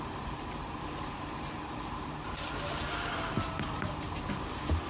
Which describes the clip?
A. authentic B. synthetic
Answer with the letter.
A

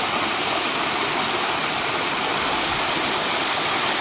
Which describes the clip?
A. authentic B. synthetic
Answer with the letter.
A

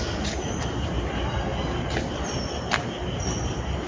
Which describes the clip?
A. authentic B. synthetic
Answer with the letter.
A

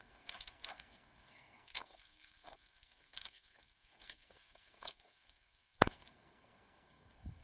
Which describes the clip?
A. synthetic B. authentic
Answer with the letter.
A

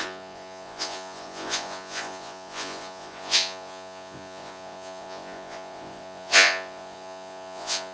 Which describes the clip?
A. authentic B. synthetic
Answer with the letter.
B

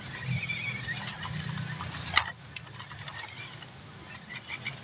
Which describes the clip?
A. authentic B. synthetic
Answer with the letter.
A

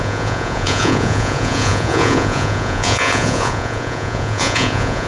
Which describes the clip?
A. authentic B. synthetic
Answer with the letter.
B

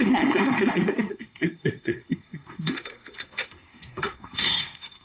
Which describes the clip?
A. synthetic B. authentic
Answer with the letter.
A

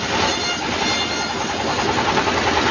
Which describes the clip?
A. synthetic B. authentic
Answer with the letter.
B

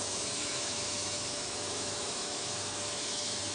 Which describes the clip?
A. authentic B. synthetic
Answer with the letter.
B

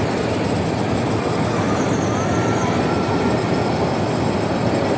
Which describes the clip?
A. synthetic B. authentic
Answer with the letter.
B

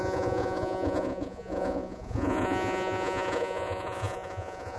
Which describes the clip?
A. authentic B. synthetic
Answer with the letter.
B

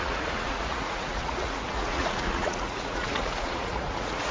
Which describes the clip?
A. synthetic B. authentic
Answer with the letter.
A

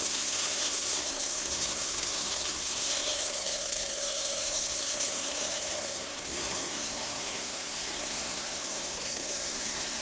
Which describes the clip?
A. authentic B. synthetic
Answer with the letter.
B